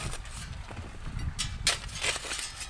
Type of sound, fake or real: real